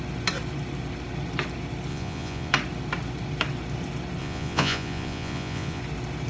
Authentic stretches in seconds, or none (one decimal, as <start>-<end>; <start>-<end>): 0.0-1.9; 2.5-4.2; 5.8-6.3